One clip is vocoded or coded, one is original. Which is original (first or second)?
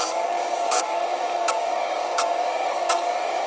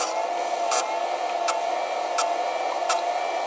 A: second